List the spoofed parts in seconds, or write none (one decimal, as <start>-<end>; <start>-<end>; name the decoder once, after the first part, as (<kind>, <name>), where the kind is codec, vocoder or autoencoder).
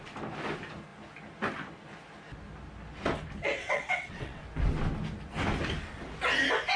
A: 3.6-4.4 (vocoder, WaveNeXt)